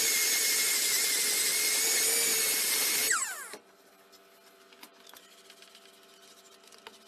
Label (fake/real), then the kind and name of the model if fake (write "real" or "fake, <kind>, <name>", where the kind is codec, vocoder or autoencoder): real